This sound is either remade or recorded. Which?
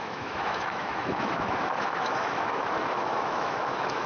remade